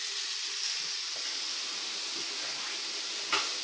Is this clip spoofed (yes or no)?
no